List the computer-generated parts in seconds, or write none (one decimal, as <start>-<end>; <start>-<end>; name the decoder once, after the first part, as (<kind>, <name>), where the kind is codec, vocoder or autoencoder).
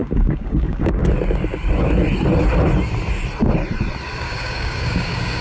0.0-1.0 (codec, DAC); 4.2-5.4